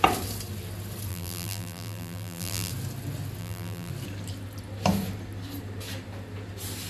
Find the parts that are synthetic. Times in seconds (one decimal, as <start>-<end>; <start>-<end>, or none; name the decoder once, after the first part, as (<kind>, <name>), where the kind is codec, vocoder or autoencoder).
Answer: 1.1-2.7 (vocoder, BigVGAN v2); 3.4-3.9